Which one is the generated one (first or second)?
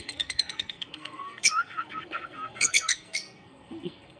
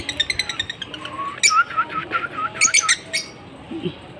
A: first